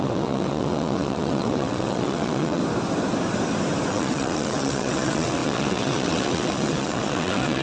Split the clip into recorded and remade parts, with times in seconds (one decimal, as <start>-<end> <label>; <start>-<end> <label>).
0.0-2.6 remade; 2.6-3.9 recorded; 3.9-7.6 remade